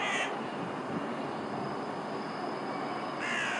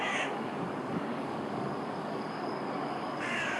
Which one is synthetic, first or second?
second